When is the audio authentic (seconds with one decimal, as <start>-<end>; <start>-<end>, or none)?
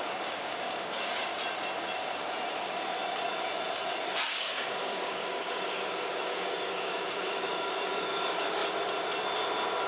1.3-4.3; 8.6-9.9